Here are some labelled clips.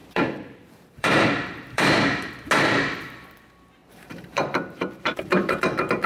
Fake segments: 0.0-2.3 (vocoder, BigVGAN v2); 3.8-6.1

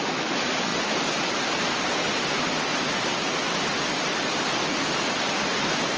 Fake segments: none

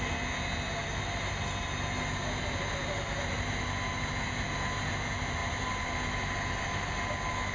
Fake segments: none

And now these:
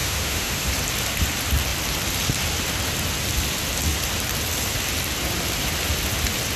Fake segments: 0.0-0.7 (autoencoder, DAC-VAE)

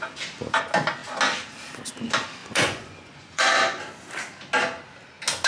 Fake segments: 2.4-3.8 (vocoder, Vocos)

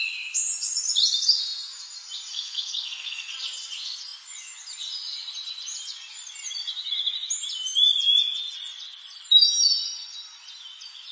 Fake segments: 2.3-3.3 (codec, SNAC)

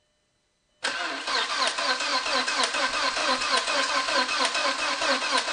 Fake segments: 3.2-3.9 (vocoder, Vocos); 4.6-5.5